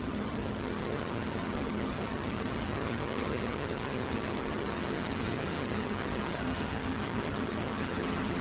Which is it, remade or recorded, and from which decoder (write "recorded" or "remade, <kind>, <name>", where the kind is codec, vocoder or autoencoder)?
remade, vocoder, HiFi-GAN